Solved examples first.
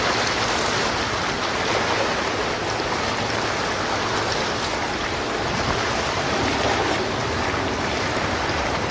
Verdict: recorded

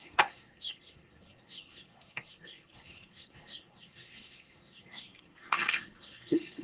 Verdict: remade